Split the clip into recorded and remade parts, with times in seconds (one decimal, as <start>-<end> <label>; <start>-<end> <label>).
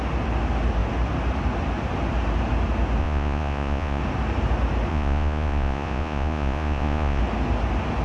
0.0-3.0 recorded; 3.0-4.0 remade; 4.0-4.9 recorded; 4.9-7.2 remade; 7.2-8.0 recorded